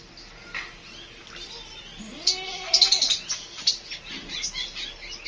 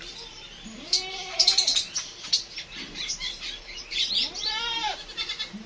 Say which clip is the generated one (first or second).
second